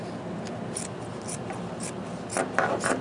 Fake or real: real